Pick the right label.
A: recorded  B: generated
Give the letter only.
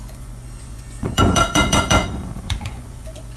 B